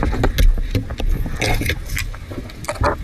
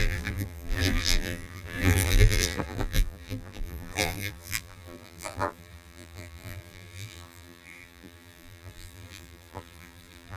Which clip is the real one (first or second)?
first